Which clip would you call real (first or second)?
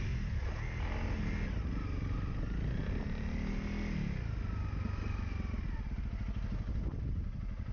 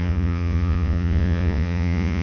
first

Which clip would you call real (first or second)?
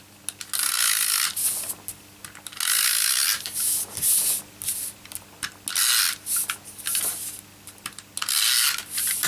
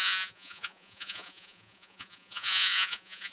first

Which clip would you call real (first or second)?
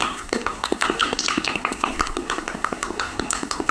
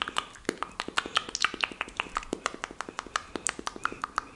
second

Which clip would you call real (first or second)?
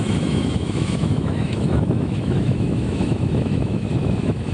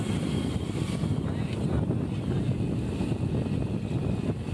second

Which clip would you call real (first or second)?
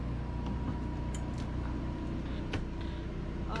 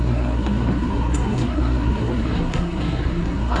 first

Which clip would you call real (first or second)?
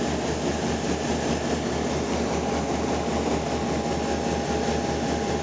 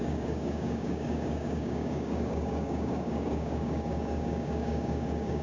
first